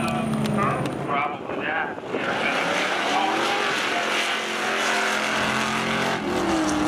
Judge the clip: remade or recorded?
recorded